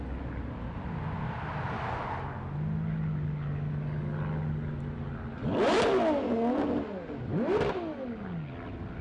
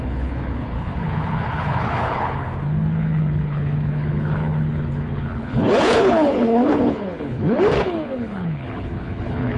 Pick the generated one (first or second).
second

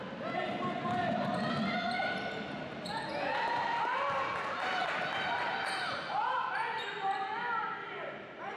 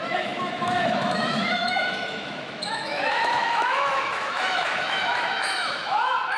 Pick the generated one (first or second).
second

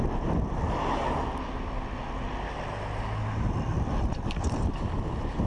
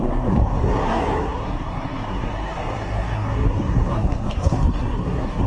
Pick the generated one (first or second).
second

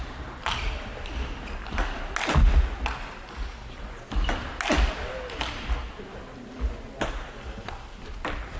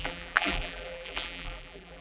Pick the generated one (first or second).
second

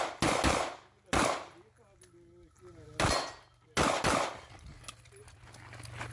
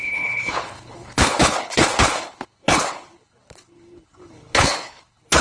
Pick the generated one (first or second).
second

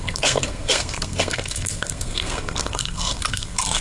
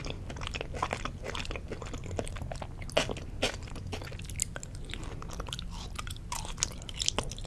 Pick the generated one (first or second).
first